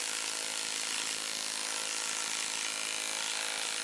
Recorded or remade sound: recorded